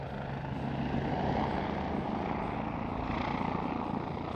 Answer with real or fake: real